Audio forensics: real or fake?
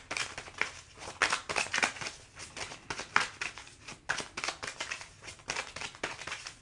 real